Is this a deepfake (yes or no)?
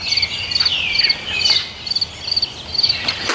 no